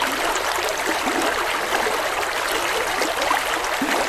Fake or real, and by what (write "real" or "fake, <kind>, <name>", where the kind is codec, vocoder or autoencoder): real